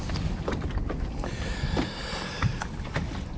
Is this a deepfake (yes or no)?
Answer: no